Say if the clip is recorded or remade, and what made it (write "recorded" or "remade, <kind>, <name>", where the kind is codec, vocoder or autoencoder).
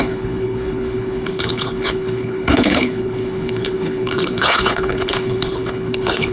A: remade, codec, HILCodec